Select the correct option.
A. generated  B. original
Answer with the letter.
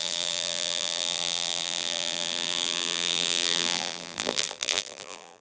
A